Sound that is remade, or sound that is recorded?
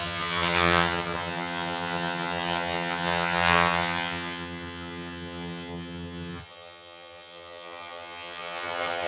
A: remade